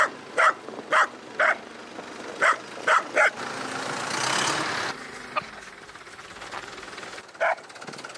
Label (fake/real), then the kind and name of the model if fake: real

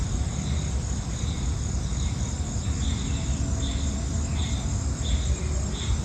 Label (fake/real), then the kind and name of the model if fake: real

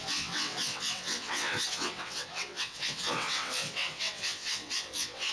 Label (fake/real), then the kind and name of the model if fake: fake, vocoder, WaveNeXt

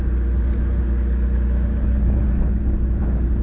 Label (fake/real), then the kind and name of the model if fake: real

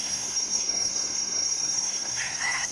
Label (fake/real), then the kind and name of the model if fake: fake, codec, SNAC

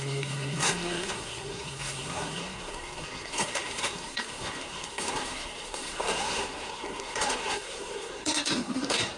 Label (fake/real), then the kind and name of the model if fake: fake, codec, SNAC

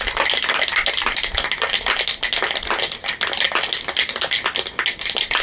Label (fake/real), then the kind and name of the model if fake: real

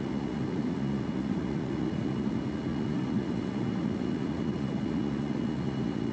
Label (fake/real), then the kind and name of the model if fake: fake, vocoder, Vocos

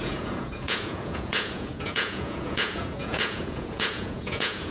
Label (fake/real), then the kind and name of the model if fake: fake, vocoder, Vocos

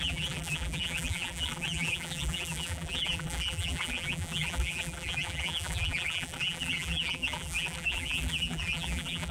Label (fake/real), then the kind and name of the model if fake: fake, vocoder, BigVGAN v2